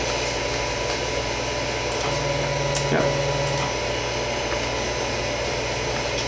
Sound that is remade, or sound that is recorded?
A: recorded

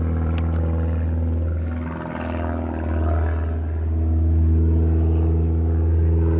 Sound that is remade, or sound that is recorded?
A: recorded